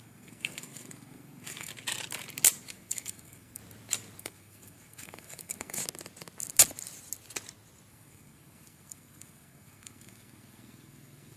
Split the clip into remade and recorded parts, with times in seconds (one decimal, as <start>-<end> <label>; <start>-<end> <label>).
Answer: 0.0-1.7 remade; 1.7-2.7 recorded; 2.7-3.6 remade; 3.6-4.2 recorded; 4.2-5.8 remade; 5.8-7.9 recorded; 7.9-11.4 remade